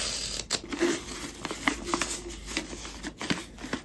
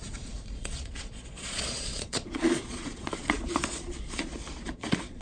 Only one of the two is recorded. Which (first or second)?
first